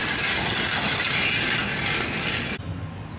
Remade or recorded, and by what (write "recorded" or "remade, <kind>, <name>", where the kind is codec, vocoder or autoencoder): recorded